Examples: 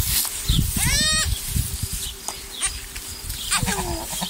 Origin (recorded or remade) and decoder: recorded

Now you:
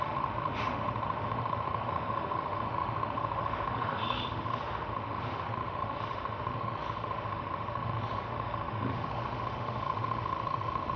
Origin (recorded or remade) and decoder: remade, autoencoder, DAC-VAE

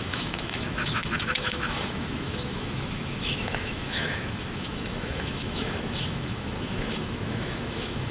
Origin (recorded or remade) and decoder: remade, autoencoder, DAC-VAE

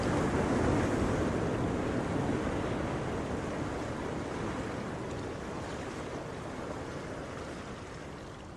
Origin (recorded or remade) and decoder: recorded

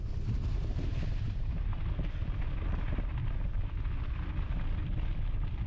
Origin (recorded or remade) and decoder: recorded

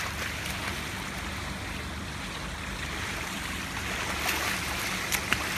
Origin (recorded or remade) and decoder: recorded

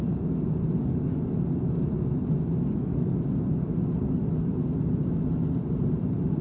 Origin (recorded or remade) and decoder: recorded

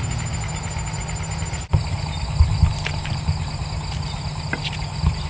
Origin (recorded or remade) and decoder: recorded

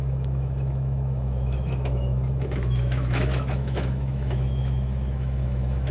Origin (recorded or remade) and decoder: remade, autoencoder, DAC-VAE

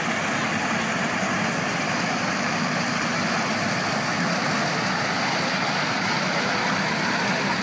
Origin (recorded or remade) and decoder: recorded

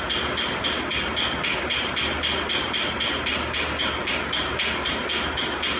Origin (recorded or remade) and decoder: recorded